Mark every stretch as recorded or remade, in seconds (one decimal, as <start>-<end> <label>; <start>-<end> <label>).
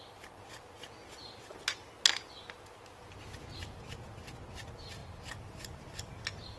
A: 0.0-6.6 recorded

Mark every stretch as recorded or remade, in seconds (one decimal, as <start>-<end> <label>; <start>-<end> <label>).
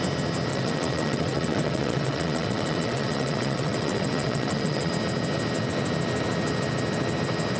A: 0.0-0.5 recorded; 0.5-4.9 remade; 4.9-7.6 recorded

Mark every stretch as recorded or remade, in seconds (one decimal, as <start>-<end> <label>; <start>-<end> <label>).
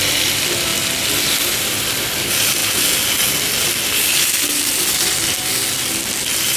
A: 0.0-6.6 recorded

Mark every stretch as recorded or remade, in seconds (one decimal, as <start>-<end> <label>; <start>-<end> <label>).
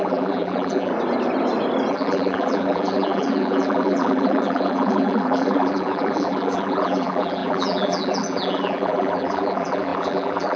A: 0.0-0.9 remade; 0.9-1.9 recorded; 1.9-10.6 remade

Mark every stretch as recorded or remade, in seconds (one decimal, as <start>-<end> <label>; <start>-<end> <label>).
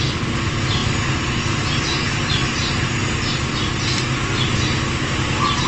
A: 0.0-5.7 recorded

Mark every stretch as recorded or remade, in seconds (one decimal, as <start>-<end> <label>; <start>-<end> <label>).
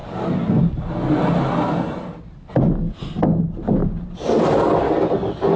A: 0.0-3.8 recorded; 3.8-4.8 remade; 4.8-5.6 recorded